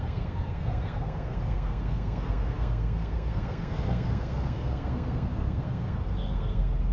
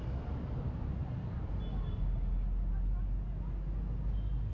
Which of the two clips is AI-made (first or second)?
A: first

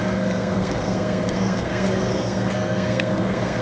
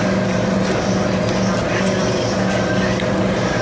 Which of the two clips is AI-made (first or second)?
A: first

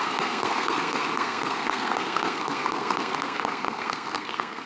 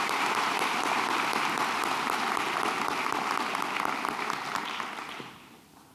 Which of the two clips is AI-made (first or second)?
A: first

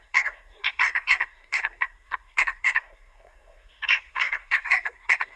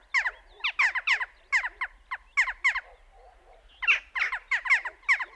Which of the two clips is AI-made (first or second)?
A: first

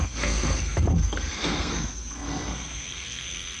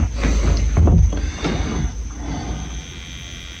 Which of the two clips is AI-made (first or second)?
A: first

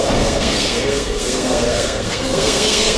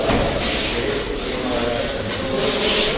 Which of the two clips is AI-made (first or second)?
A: first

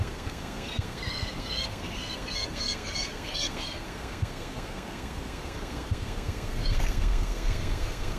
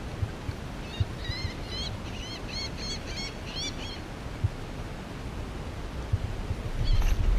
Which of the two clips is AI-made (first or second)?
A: first